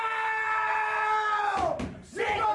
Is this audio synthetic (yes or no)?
yes